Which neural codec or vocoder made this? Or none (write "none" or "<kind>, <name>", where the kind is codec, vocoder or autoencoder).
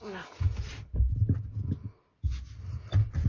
none